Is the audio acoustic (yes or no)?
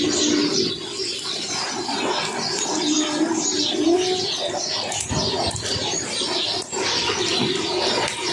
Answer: yes